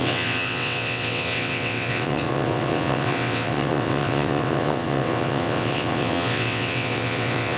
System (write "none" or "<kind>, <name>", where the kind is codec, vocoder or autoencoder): vocoder, WaveNeXt